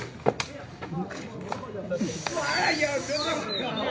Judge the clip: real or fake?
real